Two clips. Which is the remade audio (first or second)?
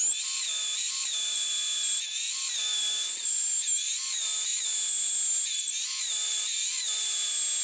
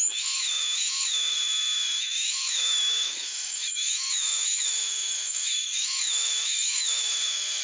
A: second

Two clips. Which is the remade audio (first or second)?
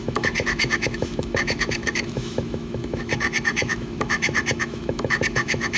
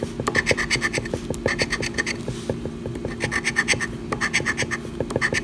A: first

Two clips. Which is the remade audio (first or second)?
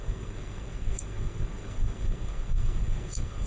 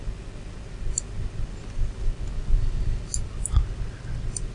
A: first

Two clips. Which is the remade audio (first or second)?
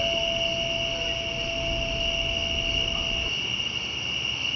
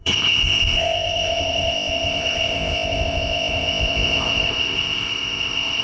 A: second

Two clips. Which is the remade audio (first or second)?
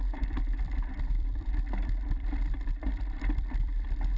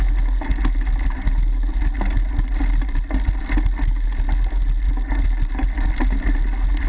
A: first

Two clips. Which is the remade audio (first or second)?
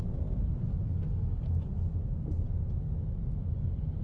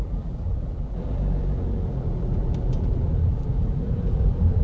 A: second